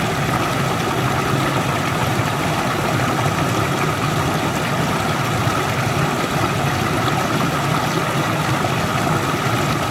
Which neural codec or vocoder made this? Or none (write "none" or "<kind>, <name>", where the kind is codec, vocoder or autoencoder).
none